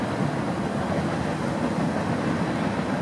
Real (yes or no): yes